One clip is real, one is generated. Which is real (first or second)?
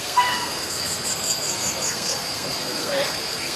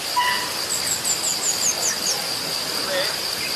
second